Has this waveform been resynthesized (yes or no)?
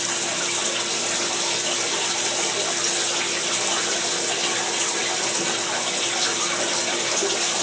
no